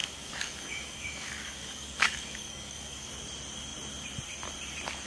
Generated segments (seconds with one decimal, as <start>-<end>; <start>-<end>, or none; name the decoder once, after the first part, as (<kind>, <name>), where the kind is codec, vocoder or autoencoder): 0.0-3.1 (codec, DAC)